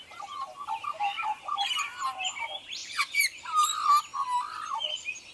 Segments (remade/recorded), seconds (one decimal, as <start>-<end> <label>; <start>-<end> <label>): 0.0-2.8 recorded; 2.8-3.4 remade; 3.4-5.3 recorded